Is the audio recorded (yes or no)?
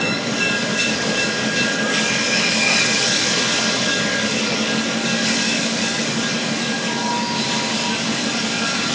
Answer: no